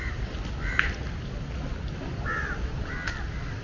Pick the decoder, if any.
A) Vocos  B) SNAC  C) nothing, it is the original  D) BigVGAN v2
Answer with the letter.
C